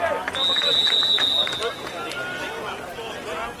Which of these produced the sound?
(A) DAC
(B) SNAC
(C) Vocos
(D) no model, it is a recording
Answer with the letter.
D